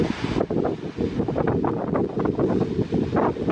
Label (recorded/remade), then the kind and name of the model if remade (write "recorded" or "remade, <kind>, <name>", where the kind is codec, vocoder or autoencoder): recorded